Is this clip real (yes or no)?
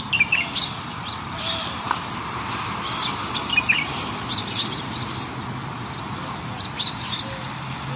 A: yes